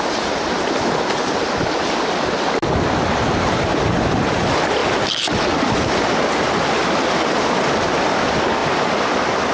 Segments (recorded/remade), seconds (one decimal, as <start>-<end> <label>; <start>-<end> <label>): 0.0-9.5 recorded